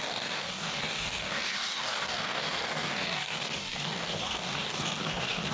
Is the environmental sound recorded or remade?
remade